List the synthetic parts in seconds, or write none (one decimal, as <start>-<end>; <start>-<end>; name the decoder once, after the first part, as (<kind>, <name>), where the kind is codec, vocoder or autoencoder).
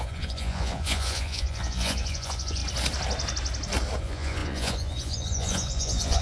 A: 0.0-2.6 (vocoder, Vocos); 4.0-6.2